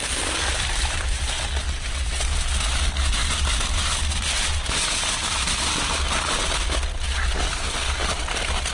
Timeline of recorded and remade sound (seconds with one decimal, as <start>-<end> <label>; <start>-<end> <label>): 0.0-1.3 remade; 1.3-3.2 recorded; 3.2-6.4 remade; 6.4-8.7 recorded